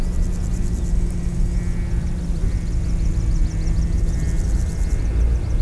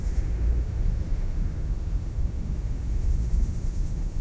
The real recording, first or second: first